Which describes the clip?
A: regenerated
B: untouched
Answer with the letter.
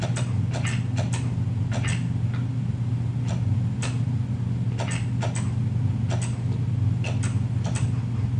B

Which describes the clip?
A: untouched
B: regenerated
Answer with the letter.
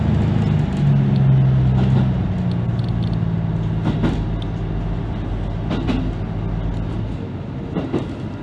A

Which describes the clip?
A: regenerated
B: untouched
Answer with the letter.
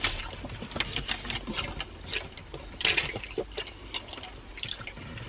B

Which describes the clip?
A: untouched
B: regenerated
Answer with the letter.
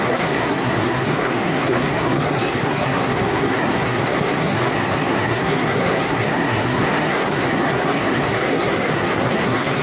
B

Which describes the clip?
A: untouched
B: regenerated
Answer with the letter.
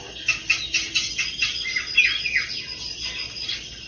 A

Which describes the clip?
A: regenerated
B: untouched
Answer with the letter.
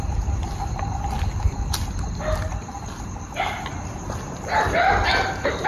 B